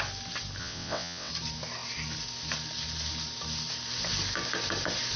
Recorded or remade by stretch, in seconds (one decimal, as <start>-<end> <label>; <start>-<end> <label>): 0.0-0.6 recorded; 0.6-1.3 remade; 1.3-5.2 recorded